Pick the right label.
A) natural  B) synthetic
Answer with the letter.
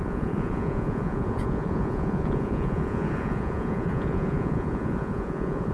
B